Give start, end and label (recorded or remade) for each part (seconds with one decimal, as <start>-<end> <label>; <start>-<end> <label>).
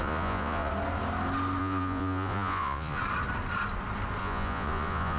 0.0-0.7 remade; 0.7-1.6 recorded; 1.6-3.0 remade; 3.0-4.2 recorded; 4.2-5.2 remade